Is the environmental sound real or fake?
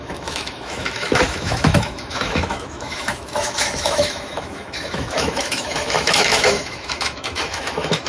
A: fake